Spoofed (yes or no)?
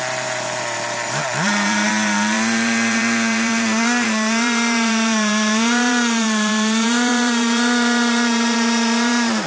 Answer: yes